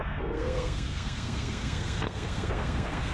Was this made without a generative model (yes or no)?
no